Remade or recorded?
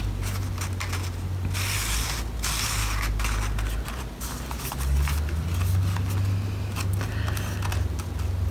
recorded